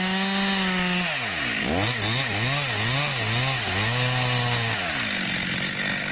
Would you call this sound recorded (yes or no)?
yes